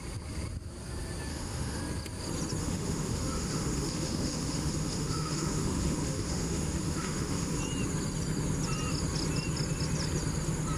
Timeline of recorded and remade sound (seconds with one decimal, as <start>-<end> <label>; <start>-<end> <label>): 0.0-1.3 recorded; 1.3-1.8 remade; 1.8-2.6 recorded; 2.6-7.6 remade; 7.6-10.8 recorded